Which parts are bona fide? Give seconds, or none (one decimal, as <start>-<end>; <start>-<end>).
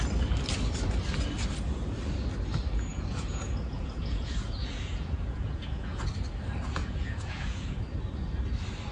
0.0-2.9; 6.1-6.8; 7.8-8.9